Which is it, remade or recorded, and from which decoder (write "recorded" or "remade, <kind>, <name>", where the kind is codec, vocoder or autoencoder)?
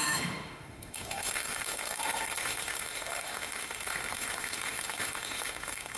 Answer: remade, autoencoder, DAC-VAE